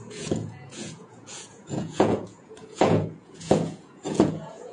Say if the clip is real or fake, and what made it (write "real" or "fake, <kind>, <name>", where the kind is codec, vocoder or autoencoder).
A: fake, vocoder, Vocos